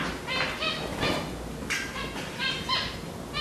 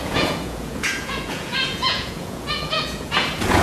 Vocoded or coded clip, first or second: second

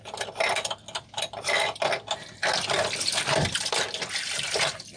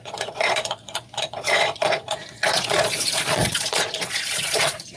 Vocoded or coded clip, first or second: second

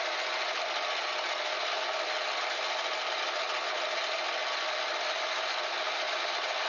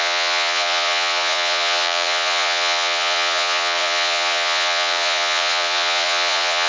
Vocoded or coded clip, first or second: second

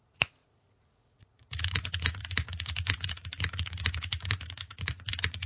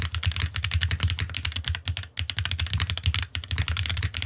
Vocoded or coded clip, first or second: first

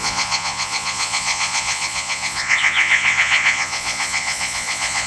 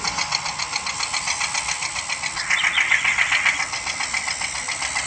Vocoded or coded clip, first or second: first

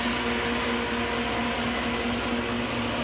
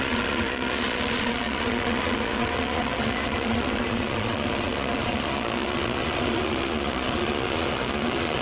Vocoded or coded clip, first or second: second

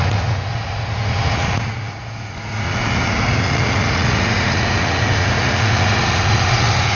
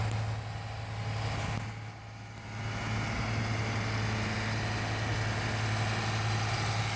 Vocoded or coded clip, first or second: first